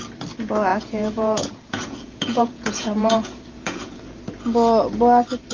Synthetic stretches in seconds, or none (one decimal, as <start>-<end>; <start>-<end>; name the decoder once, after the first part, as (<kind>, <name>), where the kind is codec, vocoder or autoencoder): 0.7-4.0 (vocoder, Vocos)